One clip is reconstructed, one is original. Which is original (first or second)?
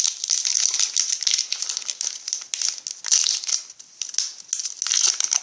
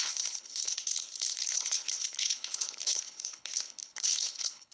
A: first